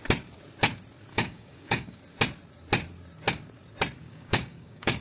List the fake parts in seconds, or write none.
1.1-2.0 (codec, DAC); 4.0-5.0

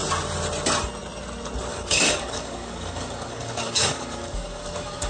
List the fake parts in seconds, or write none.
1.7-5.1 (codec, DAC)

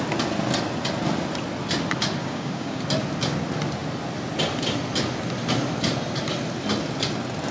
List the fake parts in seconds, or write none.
2.2-2.8 (codec, DAC)

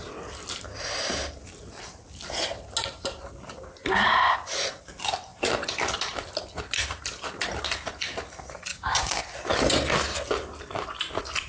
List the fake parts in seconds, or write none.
8.7-9.2 (codec, DAC)

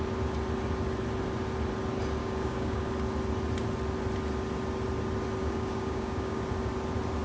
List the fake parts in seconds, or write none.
2.2-2.8 (codec, DAC); 5.4-6.4